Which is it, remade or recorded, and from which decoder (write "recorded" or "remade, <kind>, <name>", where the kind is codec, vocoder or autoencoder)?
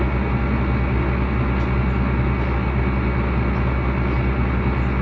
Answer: recorded